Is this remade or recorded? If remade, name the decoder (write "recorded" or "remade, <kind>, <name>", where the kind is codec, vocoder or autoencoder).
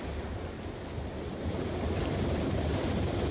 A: recorded